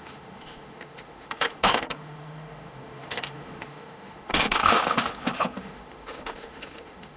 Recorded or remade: remade